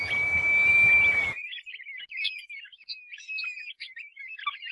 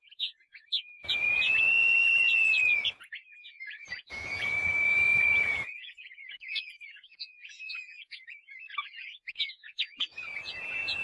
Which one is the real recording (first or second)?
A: first